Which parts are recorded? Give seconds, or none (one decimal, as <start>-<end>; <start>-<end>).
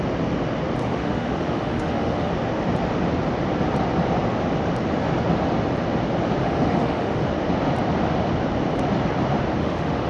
0.0-0.8; 2.3-6.4; 7.2-9.6